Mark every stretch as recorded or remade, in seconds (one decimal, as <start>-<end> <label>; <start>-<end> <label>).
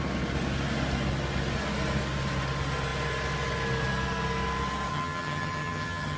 0.0-4.9 recorded; 4.9-6.2 remade